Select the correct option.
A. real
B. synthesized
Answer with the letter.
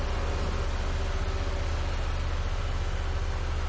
A